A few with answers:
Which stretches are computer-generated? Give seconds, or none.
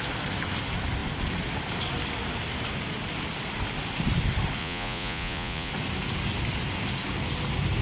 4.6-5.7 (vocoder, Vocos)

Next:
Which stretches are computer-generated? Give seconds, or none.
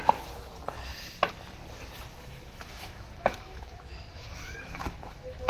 2.2-5.5 (autoencoder, DAC-VAE)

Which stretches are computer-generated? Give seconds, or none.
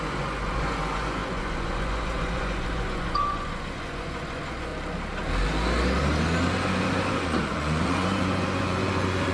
0.0-4.7 (vocoder, Vocos); 7.1-9.3